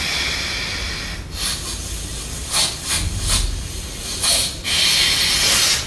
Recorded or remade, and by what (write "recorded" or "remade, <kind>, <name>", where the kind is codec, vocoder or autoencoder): recorded